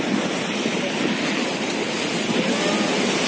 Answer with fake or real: real